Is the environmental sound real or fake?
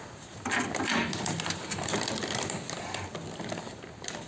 real